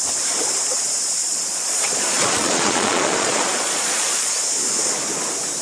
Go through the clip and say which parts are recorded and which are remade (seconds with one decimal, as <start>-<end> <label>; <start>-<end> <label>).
0.0-1.2 recorded; 1.2-4.3 remade; 4.3-5.6 recorded